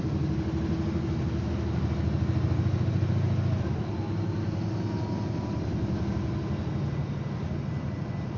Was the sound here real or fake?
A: real